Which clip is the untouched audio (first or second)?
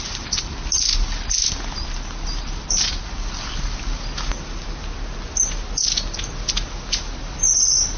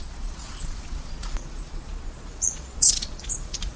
first